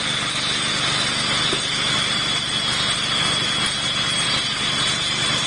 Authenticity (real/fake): real